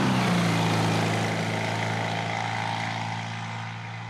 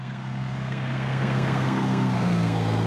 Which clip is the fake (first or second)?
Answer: second